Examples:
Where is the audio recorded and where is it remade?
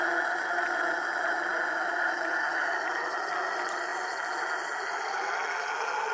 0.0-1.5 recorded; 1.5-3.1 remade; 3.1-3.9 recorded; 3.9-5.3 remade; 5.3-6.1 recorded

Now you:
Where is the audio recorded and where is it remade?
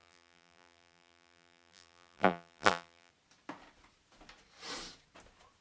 0.0-3.1 remade; 3.1-5.6 recorded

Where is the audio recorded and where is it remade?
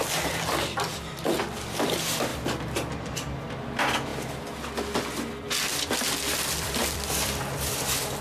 0.0-8.2 recorded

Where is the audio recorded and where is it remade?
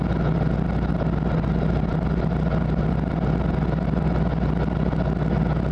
0.0-5.7 recorded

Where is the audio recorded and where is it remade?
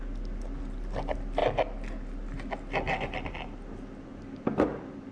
0.0-4.1 recorded; 4.1-5.1 remade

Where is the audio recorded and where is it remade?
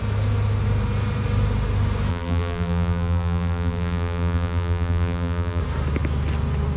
0.0-2.1 recorded; 2.1-5.6 remade; 5.6-6.8 recorded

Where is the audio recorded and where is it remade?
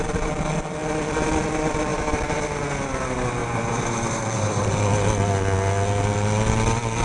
0.0-1.9 recorded; 1.9-2.4 remade; 2.4-3.4 recorded; 3.4-4.7 remade; 4.7-7.0 recorded